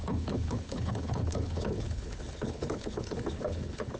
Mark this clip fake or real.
fake